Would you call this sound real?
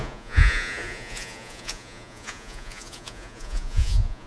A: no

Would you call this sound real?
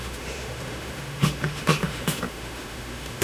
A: no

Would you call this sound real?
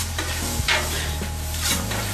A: no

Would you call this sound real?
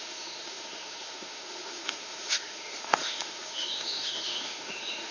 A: no